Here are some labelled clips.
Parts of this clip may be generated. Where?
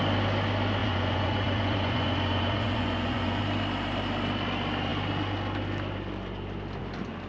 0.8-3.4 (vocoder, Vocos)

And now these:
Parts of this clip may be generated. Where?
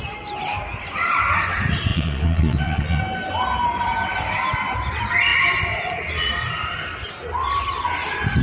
1.9-3.0 (vocoder, Vocos)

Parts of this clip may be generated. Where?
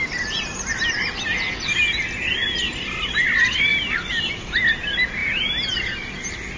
none